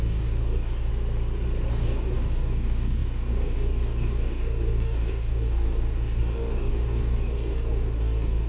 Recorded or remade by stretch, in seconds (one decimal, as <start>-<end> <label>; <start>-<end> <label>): 0.0-0.9 remade; 0.9-1.7 recorded; 1.7-8.5 remade